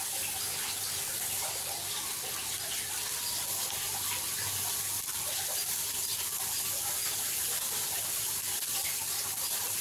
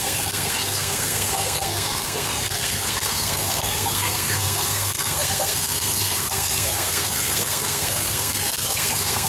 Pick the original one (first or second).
first